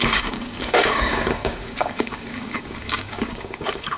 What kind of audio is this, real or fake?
fake